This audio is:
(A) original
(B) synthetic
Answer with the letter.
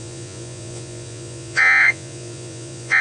B